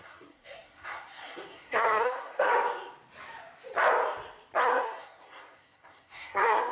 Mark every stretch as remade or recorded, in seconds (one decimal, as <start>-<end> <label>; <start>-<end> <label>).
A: 0.0-2.5 remade; 2.5-4.6 recorded; 4.6-6.7 remade